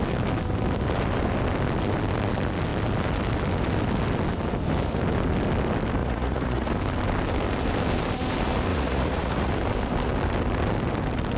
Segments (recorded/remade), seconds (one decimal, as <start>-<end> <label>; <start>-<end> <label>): 0.0-6.0 recorded; 6.0-6.7 remade; 6.7-8.7 recorded; 8.7-9.5 remade; 9.5-11.4 recorded